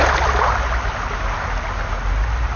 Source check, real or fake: real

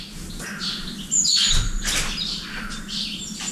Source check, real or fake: real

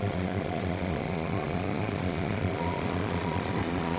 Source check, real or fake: fake